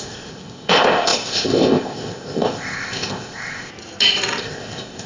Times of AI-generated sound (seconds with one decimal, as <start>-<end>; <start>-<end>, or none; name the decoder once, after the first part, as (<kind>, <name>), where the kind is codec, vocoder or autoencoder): 0.0-3.7 (codec, ZipCodec); 4.4-5.1

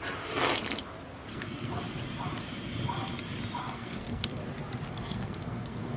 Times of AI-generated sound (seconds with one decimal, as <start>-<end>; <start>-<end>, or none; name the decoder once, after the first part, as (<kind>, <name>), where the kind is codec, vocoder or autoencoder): 1.3-1.8 (codec, SNAC); 3.6-4.4; 4.9-6.0

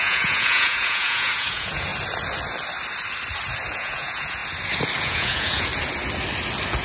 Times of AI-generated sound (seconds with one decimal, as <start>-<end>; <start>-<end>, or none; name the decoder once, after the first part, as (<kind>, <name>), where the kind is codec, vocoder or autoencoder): 0.0-1.9 (vocoder, Vocos); 3.7-4.4; 5.0-5.7

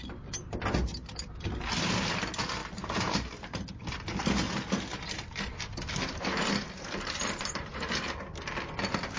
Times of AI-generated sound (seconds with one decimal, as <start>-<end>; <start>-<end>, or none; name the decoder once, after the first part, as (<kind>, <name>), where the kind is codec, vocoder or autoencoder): 2.6-3.8 (vocoder, BigVGAN v2); 4.9-8.2

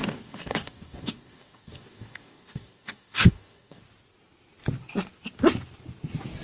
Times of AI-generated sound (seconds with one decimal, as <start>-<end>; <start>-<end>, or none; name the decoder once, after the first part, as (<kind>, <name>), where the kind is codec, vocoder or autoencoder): 0.0-3.8 (codec, DAC)